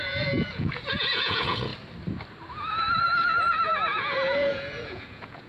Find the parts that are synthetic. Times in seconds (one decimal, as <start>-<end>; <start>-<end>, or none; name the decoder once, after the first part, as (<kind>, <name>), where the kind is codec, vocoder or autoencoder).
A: 0.0-1.7 (vocoder, Vocos); 2.5-5.5